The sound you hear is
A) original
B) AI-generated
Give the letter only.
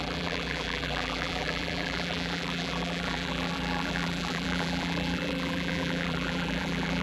B